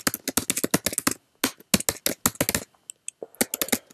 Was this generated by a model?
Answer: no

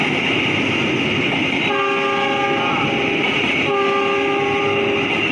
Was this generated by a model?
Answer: no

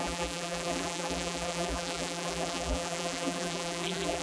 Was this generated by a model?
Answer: yes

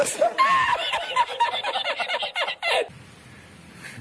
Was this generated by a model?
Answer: no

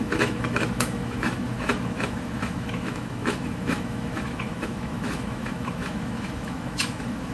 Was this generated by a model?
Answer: yes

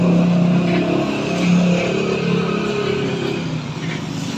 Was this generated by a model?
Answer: no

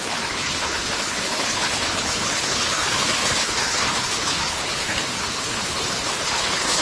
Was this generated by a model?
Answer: yes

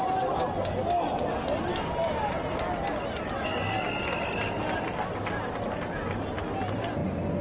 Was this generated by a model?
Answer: no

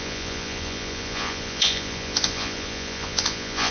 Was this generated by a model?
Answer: yes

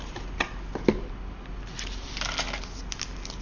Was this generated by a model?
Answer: no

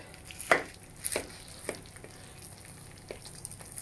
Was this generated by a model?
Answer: no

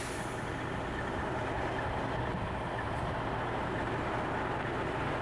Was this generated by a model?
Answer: no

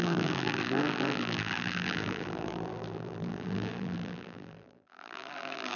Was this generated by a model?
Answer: yes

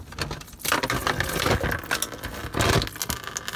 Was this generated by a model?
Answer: no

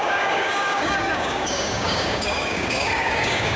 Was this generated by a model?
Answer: yes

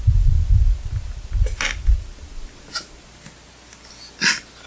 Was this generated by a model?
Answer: no